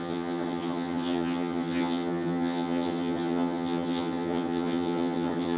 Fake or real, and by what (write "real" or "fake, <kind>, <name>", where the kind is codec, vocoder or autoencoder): fake, vocoder, HiFi-GAN